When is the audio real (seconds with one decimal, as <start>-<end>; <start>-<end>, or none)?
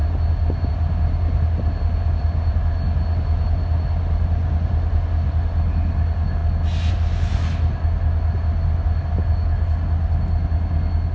0.0-11.1